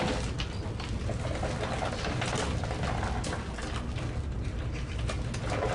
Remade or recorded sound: recorded